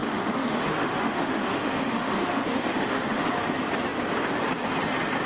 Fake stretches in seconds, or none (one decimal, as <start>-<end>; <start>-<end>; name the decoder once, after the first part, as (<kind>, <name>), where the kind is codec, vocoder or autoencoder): 0.0-3.2 (autoencoder, DAC-VAE)

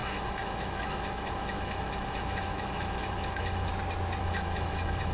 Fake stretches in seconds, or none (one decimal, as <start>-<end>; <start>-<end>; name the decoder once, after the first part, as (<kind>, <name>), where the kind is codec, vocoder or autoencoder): 0.0-3.7 (autoencoder, DAC-VAE); 4.2-5.1

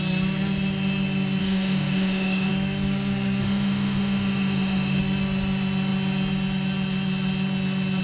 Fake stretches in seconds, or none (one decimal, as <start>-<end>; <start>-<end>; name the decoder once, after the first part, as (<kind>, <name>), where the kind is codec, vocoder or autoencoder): 1.4-2.5 (autoencoder, DAC-VAE); 3.4-5.0

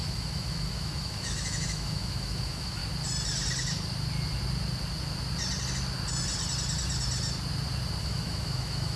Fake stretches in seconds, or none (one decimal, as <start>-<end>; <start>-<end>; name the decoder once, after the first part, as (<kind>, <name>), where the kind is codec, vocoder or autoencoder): 0.0-2.8 (autoencoder, DAC-VAE); 8.0-9.0

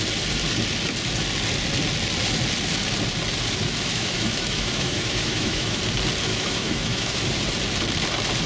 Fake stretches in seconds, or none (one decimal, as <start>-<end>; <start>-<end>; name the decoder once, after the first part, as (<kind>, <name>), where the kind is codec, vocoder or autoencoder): 3.9-5.8 (autoencoder, DAC-VAE); 6.3-7.2

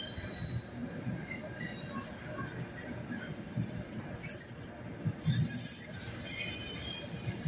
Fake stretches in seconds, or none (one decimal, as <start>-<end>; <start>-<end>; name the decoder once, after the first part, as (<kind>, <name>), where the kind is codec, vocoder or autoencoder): none

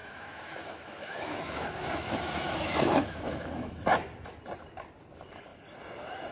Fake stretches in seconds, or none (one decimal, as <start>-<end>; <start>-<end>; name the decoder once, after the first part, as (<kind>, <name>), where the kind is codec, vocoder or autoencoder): 0.0-3.8 (autoencoder, DAC-VAE)

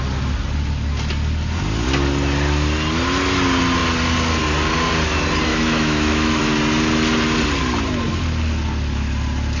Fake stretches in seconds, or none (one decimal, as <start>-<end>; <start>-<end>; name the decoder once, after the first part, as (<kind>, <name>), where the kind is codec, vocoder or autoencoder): 5.5-6.4 (autoencoder, DAC-VAE)